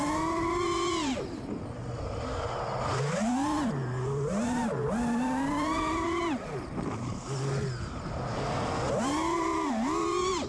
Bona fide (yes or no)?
yes